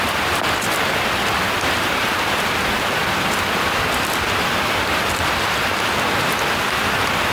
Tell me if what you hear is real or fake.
real